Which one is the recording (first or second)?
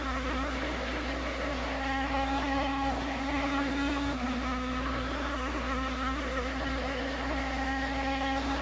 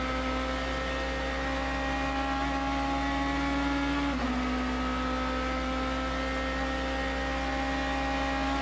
second